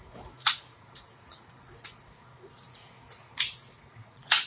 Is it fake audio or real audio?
fake